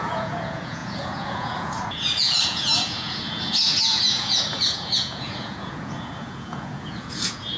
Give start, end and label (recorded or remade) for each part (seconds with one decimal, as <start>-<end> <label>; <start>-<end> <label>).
0.0-7.6 remade